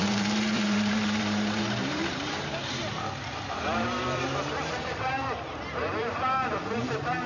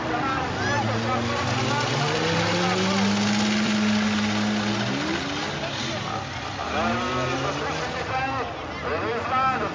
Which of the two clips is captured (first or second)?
second